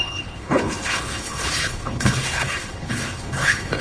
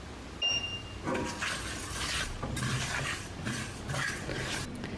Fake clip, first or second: first